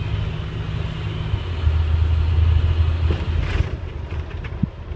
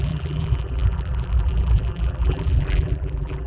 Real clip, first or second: first